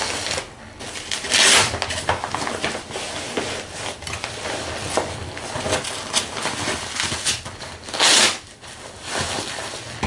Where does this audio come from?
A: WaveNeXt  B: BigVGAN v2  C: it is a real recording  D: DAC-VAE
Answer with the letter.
C